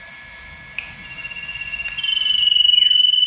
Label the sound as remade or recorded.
recorded